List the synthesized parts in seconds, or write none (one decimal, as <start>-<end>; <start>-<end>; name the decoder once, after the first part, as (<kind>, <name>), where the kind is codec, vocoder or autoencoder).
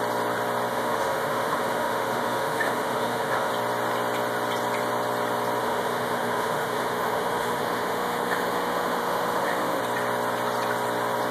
0.7-3.5 (autoencoder, DAC-VAE); 5.6-9.8